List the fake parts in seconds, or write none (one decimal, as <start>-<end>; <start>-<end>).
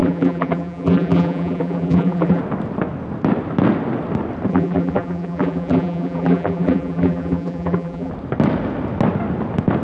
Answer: 0.0-2.4; 4.5-8.1